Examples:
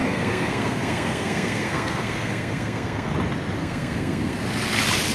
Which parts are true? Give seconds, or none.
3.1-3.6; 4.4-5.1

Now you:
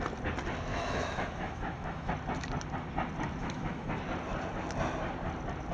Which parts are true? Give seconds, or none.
0.0-0.7; 2.1-3.4; 3.9-5.7